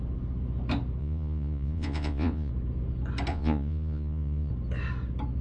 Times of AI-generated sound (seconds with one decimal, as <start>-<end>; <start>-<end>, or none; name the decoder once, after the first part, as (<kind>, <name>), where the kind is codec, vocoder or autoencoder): 1.0-2.5 (vocoder, Vocos); 3.3-4.5